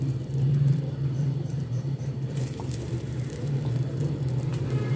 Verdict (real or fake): fake